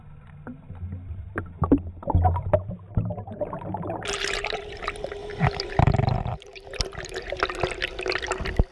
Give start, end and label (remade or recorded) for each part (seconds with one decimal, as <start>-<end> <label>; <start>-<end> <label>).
0.0-2.4 recorded; 2.4-4.8 remade; 4.8-5.2 recorded; 5.2-7.4 remade; 7.4-8.7 recorded